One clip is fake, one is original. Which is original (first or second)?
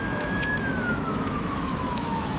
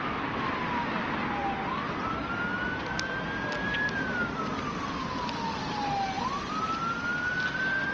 second